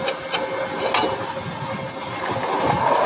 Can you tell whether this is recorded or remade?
recorded